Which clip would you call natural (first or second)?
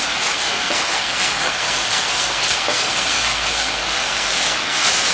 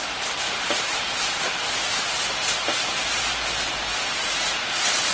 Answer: second